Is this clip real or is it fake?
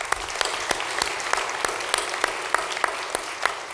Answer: real